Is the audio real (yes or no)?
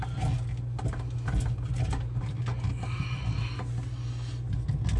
yes